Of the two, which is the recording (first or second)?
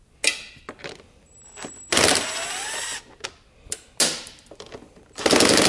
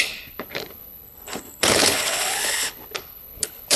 first